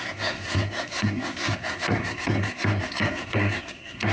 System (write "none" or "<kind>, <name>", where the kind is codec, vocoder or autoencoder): codec, SNAC